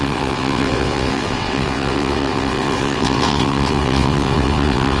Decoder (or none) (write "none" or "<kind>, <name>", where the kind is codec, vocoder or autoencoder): vocoder, WaveNeXt